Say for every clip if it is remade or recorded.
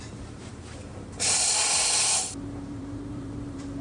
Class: remade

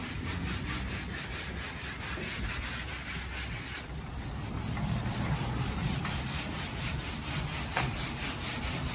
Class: remade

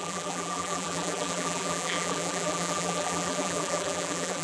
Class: remade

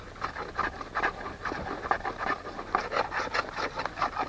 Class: recorded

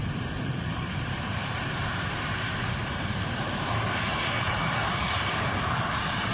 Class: remade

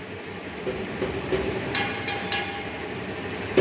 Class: recorded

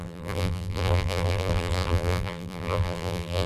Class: remade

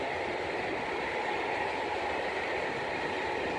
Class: recorded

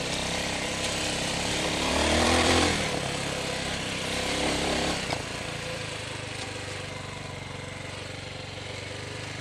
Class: remade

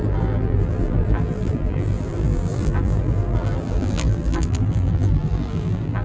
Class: remade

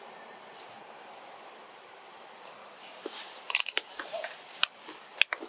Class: remade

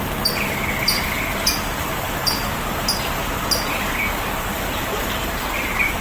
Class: remade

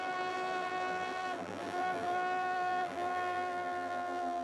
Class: remade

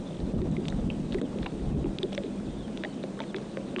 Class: remade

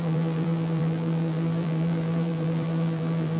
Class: remade